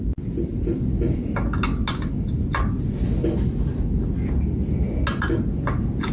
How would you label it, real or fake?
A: real